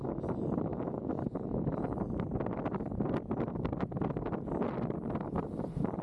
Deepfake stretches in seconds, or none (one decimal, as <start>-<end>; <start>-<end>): none